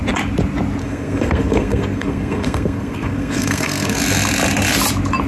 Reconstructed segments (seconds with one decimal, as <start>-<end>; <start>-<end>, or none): 0.8-4.0